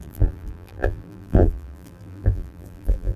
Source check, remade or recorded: remade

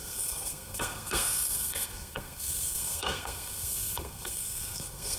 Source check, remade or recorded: remade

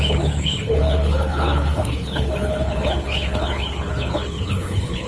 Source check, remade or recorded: remade